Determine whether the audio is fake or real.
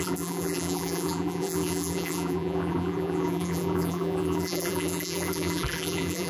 fake